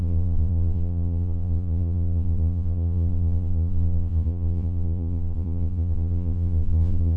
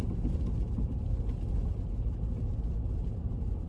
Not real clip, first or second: first